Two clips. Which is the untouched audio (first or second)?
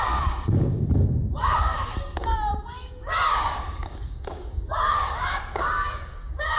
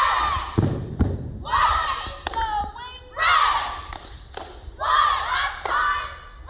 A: second